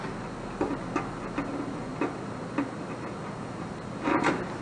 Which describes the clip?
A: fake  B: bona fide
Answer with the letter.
B